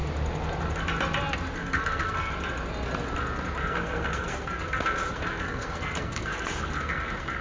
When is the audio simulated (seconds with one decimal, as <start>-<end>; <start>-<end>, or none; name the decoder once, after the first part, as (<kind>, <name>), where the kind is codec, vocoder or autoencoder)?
1.6-2.3 (codec, SNAC); 3.6-7.4